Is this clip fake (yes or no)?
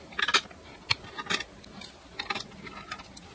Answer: no